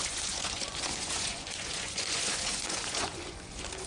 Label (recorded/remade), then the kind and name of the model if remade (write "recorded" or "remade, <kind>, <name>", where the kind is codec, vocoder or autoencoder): remade, vocoder, Vocos